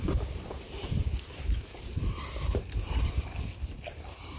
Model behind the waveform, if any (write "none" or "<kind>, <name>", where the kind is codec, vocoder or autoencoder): vocoder, BigVGAN v2